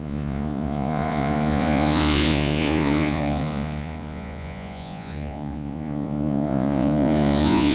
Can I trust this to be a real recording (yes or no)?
no